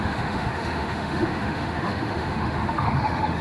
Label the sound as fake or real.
fake